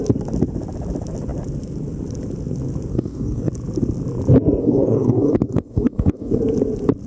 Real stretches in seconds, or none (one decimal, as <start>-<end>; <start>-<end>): 0.0-2.9; 3.5-4.6; 6.4-7.1

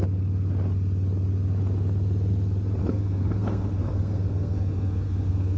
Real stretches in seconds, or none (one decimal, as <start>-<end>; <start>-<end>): 0.0-2.8

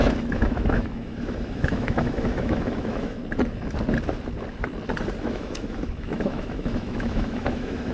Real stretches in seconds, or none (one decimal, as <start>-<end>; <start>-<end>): 3.2-5.2